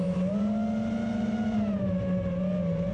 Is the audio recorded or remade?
recorded